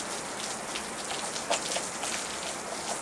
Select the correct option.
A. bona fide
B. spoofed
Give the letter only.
A